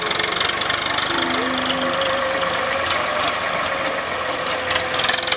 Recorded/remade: recorded